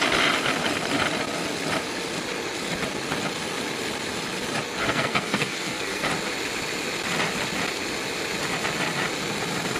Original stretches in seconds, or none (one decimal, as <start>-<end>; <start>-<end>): 0.0-4.8; 6.1-9.8